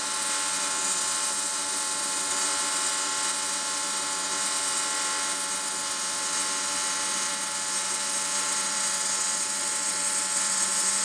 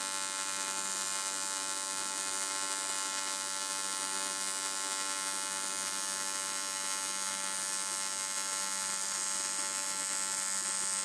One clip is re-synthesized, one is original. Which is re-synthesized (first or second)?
first